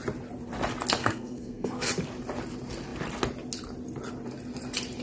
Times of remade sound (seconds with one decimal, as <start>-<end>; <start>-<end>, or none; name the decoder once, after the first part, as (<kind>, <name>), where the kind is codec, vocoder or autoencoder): 1.0-1.9 (codec, SNAC)